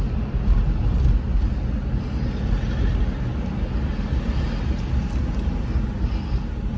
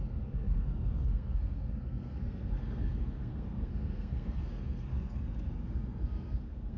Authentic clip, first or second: first